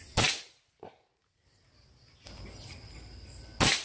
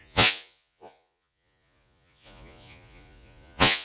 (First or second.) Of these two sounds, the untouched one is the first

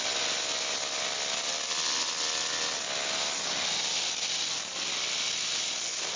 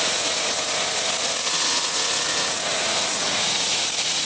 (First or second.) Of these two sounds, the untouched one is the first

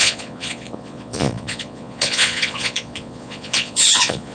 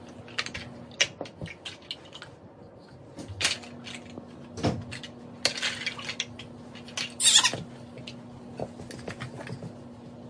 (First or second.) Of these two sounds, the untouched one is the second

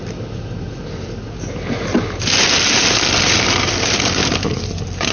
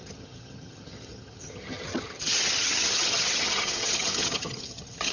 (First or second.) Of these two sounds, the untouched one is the first